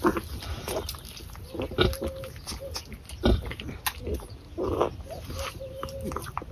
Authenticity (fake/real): real